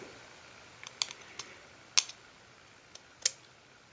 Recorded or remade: recorded